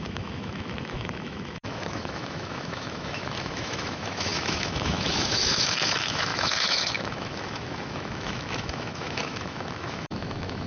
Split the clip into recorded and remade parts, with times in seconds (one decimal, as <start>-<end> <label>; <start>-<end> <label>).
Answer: 0.0-10.7 remade